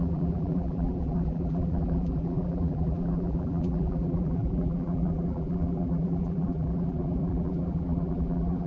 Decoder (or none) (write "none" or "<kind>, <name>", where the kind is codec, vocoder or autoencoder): vocoder, BigVGAN v2